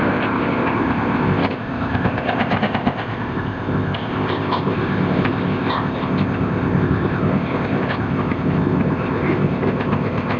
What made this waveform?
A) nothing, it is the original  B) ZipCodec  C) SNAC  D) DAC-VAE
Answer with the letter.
B